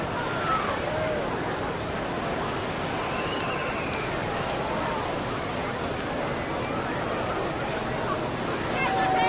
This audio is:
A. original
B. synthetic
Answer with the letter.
A